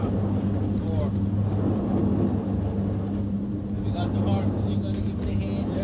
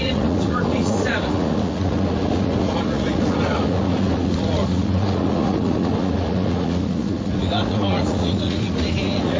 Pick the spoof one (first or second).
second